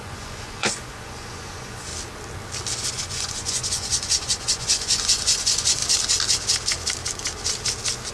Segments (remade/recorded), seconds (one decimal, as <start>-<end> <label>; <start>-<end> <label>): 0.0-1.9 remade; 1.9-2.9 recorded; 2.9-5.8 remade; 5.8-8.1 recorded